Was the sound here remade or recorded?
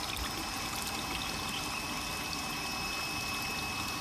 recorded